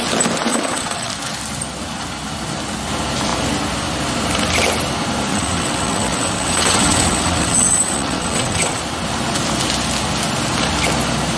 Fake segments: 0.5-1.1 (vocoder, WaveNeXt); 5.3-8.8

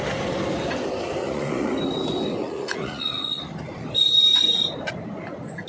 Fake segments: 1.2-1.7 (vocoder, Vocos); 2.4-3.5

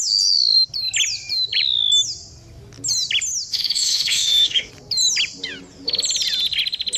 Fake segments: 3.5-4.7 (autoencoder, DAC-VAE)

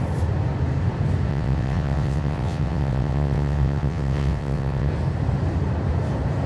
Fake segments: 1.3-4.9 (vocoder, WaveNeXt)

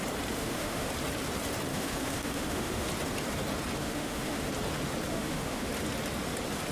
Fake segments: 0.4-0.9 (autoencoder, DAC-VAE); 1.7-2.9; 3.8-4.4; 5.1-5.7

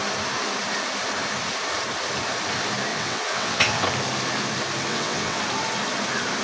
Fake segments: 2.9-3.9 (vocoder, WaveNeXt); 4.9-5.4

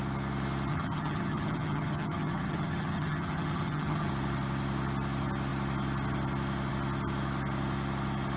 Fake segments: 0.7-4.1 (vocoder, HiFi-GAN)